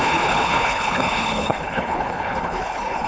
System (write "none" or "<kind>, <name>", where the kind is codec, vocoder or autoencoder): codec, HILCodec